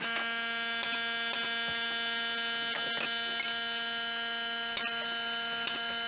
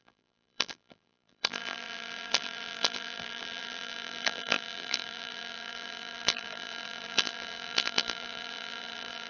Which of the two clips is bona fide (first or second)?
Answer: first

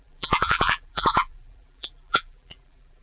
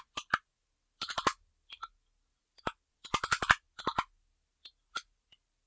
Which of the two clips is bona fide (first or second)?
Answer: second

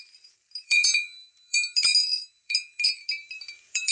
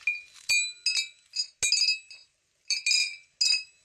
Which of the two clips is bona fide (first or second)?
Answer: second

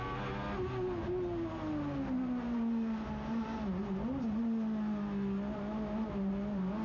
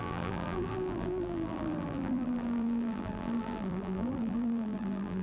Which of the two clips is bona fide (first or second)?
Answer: first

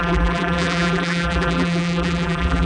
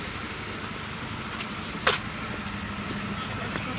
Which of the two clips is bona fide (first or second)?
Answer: second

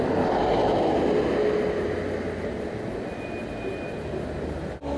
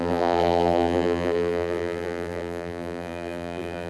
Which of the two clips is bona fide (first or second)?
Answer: first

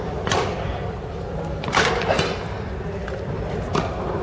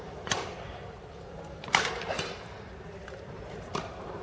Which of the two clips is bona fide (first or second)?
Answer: first